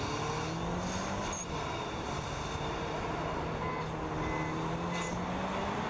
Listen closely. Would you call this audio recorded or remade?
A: recorded